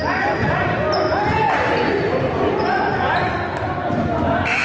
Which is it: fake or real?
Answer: real